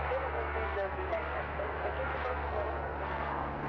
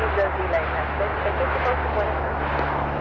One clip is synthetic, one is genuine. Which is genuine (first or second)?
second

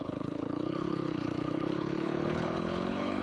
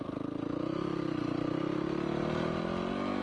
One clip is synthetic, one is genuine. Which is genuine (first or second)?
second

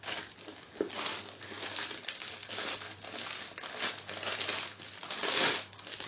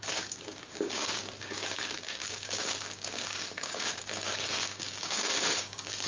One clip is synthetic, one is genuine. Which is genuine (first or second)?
first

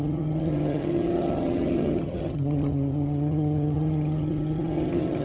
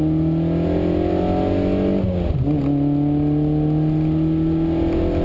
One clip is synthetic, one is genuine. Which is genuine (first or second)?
second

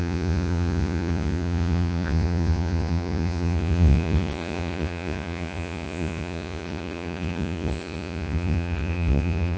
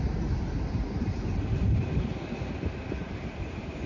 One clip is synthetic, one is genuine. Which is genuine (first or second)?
second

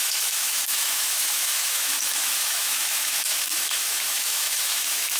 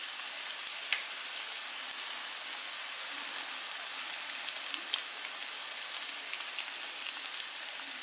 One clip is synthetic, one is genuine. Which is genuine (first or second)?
second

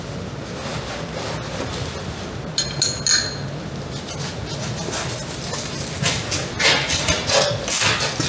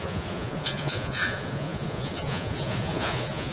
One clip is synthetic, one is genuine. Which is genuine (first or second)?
first